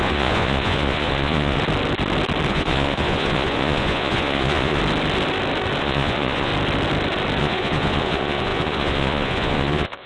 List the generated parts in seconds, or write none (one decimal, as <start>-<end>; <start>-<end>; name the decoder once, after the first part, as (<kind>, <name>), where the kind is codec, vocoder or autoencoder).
0.0-1.6 (vocoder, Vocos); 2.5-4.8; 5.8-6.5; 7.4-10.1